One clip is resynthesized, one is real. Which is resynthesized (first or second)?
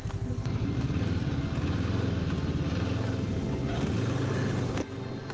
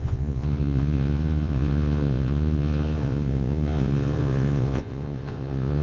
second